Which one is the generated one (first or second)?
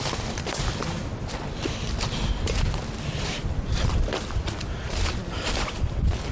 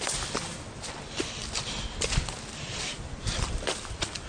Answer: first